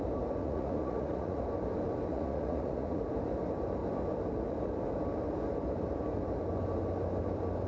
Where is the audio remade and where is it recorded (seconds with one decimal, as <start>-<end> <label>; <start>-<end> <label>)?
0.0-0.4 recorded; 0.4-1.4 remade; 1.4-2.1 recorded; 2.1-3.0 remade; 3.0-7.7 recorded